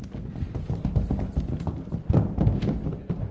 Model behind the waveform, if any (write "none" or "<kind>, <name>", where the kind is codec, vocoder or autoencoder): none